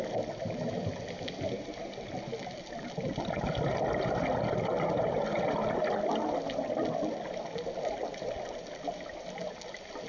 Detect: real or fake real